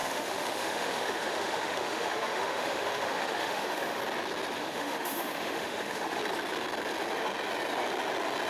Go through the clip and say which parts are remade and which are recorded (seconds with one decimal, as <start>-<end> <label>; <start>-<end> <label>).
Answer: 0.0-4.0 remade; 4.0-4.6 recorded; 4.6-6.2 remade; 6.2-8.5 recorded